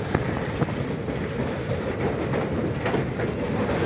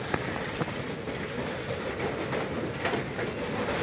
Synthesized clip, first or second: first